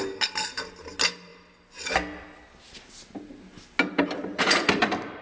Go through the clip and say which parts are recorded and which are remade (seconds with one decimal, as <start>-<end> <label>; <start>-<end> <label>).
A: 0.0-5.2 recorded